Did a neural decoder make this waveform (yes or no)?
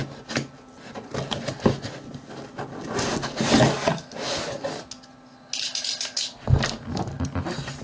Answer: no